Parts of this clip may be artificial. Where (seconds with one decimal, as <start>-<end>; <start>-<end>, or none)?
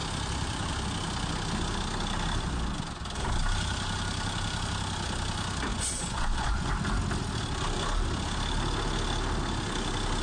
5.7-6.7